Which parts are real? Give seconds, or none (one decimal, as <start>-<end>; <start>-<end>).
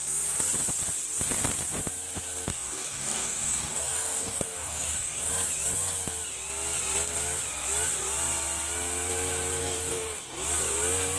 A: 0.0-2.5; 5.3-9.6; 10.2-11.2